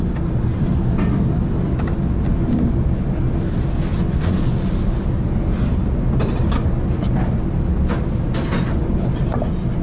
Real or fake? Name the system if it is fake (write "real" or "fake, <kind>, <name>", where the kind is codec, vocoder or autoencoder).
real